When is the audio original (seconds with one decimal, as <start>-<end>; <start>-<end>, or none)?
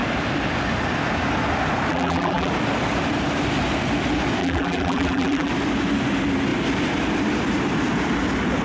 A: 0.0-1.9; 2.5-4.4; 5.5-8.6